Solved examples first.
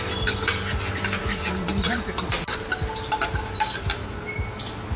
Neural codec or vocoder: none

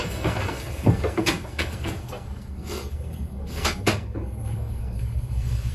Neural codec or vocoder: codec, SNAC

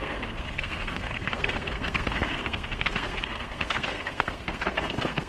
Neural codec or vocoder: codec, SNAC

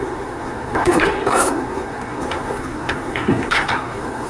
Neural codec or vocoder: codec, SNAC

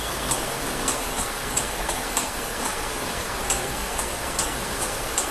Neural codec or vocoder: codec, SNAC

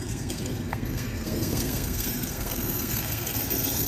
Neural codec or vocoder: codec, SNAC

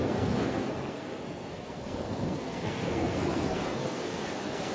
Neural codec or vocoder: codec, SNAC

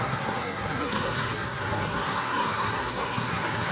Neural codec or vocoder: codec, SNAC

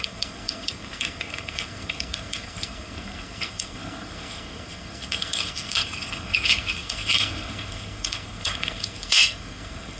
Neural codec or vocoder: codec, SNAC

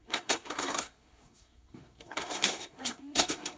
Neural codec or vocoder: codec, SNAC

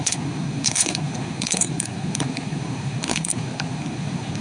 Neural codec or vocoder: codec, SNAC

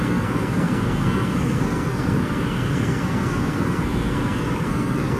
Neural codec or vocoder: codec, SNAC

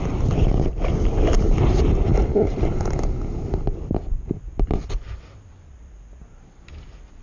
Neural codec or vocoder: none